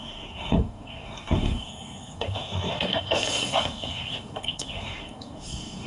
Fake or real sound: fake